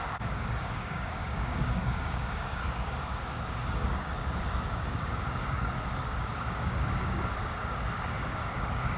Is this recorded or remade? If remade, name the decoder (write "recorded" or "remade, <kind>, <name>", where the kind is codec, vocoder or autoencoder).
remade, codec, DAC